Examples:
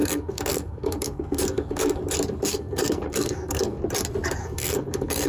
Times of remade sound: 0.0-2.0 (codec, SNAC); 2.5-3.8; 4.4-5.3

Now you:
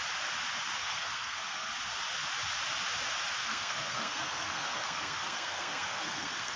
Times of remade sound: 0.8-1.7 (codec, SNAC); 3.4-6.6

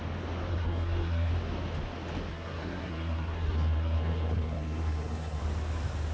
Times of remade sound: 0.5-1.3 (codec, SNAC); 2.3-5.4

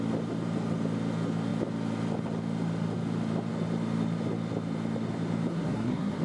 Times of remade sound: 5.5-6.2 (codec, SNAC)

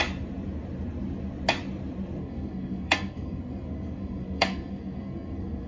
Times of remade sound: 2.2-5.7 (codec, SNAC)

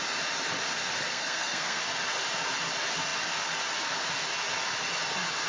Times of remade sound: 1.1-1.8 (codec, SNAC)